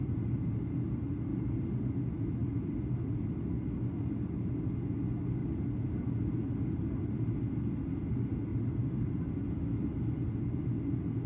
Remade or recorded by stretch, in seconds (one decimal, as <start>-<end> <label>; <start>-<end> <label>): 0.0-1.3 recorded; 1.3-1.9 remade; 1.9-5.4 recorded; 5.4-6.4 remade; 6.4-8.5 recorded; 8.5-9.2 remade; 9.2-11.3 recorded